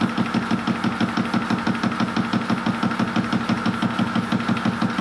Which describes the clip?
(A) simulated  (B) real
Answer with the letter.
B